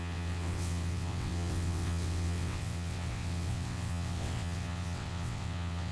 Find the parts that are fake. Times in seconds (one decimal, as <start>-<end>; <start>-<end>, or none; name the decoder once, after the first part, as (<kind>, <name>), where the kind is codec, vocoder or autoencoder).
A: 0.0-5.9 (vocoder, WaveNeXt)